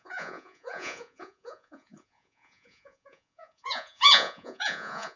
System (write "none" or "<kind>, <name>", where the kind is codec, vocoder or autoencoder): vocoder, Vocos